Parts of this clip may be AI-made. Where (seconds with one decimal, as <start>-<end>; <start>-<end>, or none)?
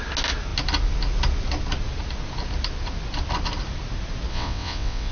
4.3-5.1